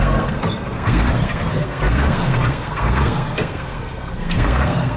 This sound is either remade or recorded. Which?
remade